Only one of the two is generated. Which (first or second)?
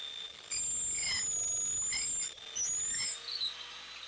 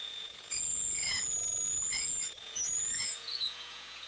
second